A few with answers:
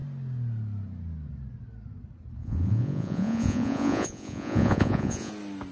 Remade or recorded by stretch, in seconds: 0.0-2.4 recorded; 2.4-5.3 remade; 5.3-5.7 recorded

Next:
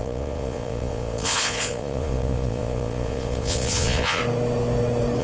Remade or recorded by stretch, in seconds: 0.0-4.2 remade; 4.2-5.2 recorded

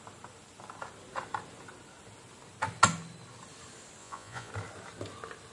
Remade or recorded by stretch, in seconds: 0.0-4.0 recorded; 4.0-4.5 remade; 4.5-5.5 recorded

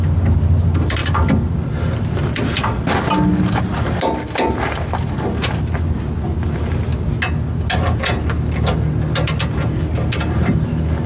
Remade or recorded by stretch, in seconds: 0.0-11.1 recorded

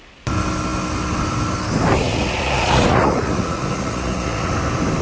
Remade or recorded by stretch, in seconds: 0.0-2.0 recorded; 2.0-4.5 remade; 4.5-5.0 recorded

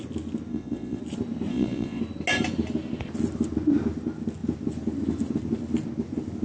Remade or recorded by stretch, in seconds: 0.0-0.5 recorded; 0.5-1.0 remade; 1.0-1.5 recorded; 1.5-2.0 remade; 2.0-6.4 recorded

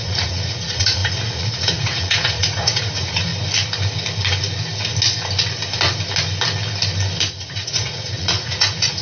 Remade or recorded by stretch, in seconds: 0.0-3.3 remade; 3.3-7.3 recorded; 7.3-9.0 remade

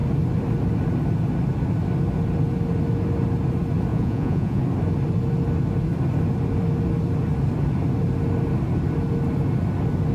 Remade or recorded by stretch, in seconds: 0.0-3.9 recorded; 3.9-4.6 remade; 4.6-10.1 recorded